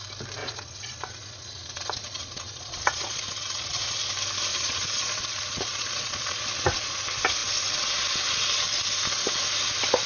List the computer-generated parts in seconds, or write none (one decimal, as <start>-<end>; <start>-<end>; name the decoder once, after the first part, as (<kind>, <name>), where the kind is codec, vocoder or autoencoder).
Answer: 0.4-4.1 (vocoder, Vocos); 4.5-7.0